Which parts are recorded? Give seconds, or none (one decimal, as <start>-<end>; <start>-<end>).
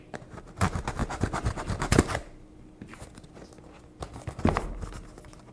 0.0-5.5